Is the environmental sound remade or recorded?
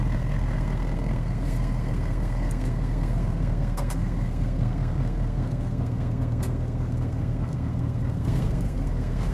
remade